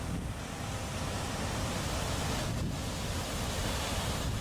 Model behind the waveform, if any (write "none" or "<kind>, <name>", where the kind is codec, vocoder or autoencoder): none